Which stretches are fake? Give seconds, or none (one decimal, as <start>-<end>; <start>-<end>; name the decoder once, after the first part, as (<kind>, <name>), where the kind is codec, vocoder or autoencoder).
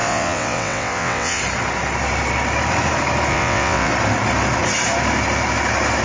0.0-1.4 (vocoder, WaveNeXt); 3.3-3.9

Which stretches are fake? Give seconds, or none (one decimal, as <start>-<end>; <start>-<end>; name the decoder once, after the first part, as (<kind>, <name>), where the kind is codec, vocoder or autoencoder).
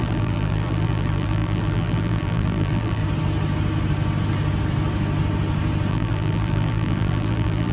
0.0-3.0 (vocoder, BigVGAN v2); 5.9-7.7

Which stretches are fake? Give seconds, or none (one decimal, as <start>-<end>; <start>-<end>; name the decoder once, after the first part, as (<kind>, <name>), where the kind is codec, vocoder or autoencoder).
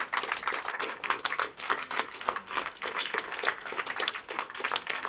0.7-3.8 (codec, SNAC); 4.2-5.1